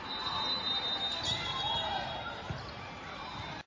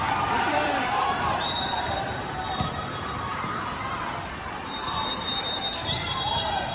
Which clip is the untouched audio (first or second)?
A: first